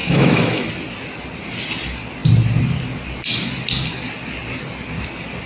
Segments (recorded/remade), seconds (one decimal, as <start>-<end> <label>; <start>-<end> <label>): 0.0-0.7 remade; 0.7-5.5 recorded

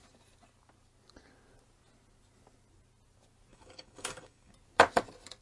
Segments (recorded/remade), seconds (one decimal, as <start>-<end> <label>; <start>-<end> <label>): 0.0-3.5 recorded; 3.5-4.5 remade; 4.5-5.4 recorded

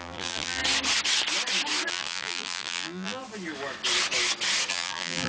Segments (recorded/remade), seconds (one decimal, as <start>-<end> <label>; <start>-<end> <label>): 0.0-0.6 remade; 0.6-1.9 recorded; 1.9-3.2 remade; 3.2-4.7 recorded; 4.7-5.3 remade

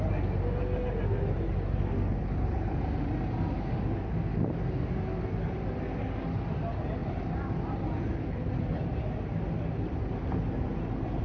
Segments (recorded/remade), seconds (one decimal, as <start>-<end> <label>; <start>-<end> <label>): 0.0-11.2 recorded

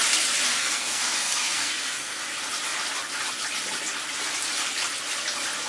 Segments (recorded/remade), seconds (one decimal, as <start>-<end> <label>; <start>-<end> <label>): 0.0-0.5 recorded; 0.5-2.2 remade; 2.2-5.7 recorded

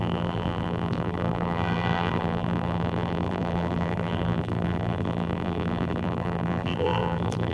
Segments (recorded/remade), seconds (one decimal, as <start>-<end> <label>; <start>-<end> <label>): 0.0-7.5 remade

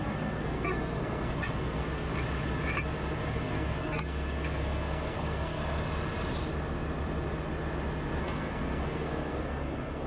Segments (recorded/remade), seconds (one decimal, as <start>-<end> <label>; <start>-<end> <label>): 0.0-2.1 remade; 2.1-3.3 recorded; 3.3-5.6 remade; 5.6-8.2 recorded; 8.2-10.1 remade

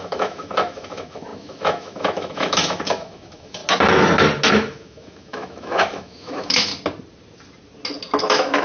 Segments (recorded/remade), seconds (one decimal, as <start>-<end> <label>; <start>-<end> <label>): 0.0-3.6 remade; 3.6-4.5 recorded; 4.5-6.7 remade; 6.7-8.2 recorded; 8.2-8.6 remade